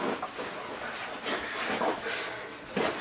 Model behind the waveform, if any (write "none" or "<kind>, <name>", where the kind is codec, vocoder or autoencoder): none